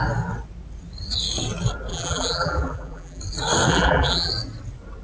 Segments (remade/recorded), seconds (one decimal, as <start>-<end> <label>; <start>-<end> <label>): 0.0-1.9 recorded; 1.9-3.2 remade; 3.2-3.7 recorded; 3.7-4.3 remade; 4.3-5.0 recorded